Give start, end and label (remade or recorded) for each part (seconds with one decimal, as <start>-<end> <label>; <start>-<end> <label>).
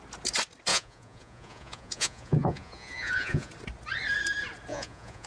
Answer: 0.0-0.7 recorded; 0.7-3.5 remade; 3.5-4.7 recorded; 4.7-5.3 remade